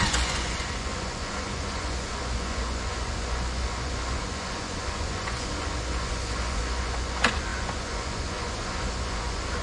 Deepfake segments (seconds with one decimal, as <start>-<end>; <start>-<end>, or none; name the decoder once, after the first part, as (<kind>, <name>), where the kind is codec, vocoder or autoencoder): 0.0-9.6 (vocoder, Vocos)